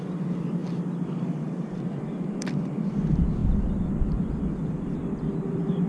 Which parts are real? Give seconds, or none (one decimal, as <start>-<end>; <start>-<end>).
5.0-5.5